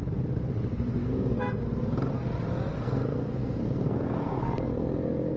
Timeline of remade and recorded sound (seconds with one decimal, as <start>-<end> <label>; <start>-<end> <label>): 0.0-1.0 recorded; 1.0-1.6 remade; 1.6-2.7 recorded; 2.7-5.4 remade